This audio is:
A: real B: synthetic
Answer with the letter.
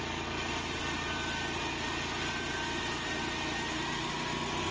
A